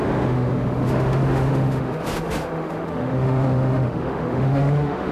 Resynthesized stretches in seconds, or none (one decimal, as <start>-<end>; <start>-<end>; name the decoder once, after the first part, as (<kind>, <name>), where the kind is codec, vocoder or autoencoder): 0.0-5.1 (autoencoder, DAC-VAE)